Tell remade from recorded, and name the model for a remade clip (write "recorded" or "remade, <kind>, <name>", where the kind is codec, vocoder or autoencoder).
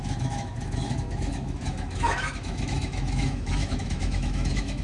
remade, autoencoder, DAC-VAE